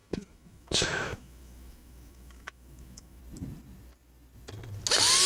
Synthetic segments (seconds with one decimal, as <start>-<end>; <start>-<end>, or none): 0.0-3.2